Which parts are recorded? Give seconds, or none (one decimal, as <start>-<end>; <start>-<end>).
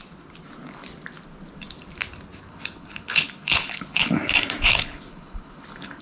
0.0-2.5; 4.2-4.7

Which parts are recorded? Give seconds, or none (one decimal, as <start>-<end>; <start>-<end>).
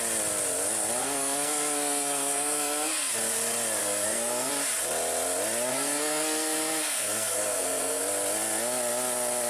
0.0-1.0; 3.1-3.8; 4.5-5.7; 8.0-9.5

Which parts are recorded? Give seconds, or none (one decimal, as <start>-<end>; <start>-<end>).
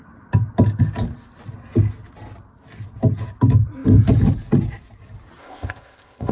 0.0-5.4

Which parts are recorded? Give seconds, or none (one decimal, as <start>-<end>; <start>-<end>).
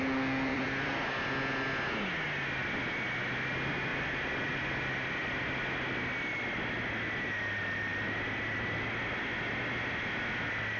0.0-0.5; 1.1-3.9; 5.1-10.8